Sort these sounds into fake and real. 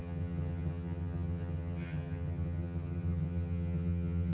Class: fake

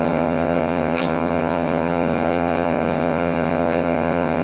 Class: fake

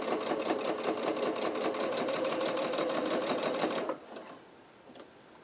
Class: real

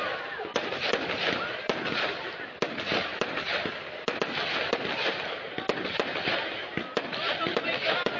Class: real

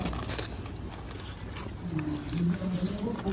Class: real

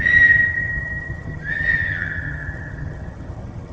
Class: fake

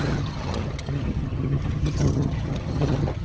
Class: fake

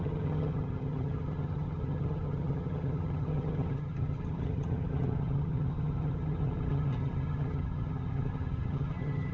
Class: fake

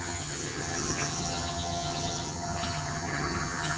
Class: fake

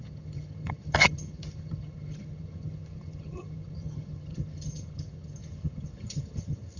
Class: fake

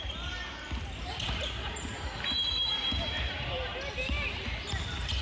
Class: real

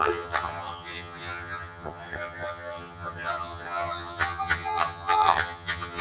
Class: fake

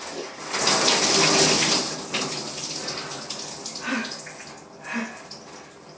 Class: real